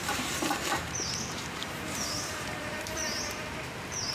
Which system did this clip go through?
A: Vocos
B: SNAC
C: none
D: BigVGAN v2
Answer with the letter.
D